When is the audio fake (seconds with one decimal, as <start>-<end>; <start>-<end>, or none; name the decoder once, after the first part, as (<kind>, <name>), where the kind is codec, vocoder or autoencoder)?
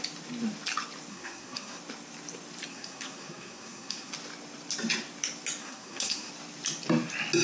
1.1-1.8 (codec, SNAC); 2.7-4.1; 5.6-6.3